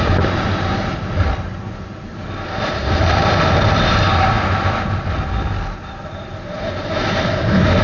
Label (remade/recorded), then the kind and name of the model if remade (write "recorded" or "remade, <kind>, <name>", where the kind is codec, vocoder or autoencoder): recorded